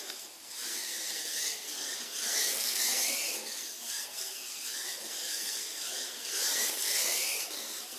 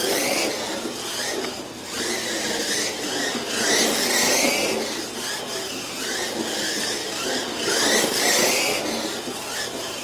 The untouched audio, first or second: second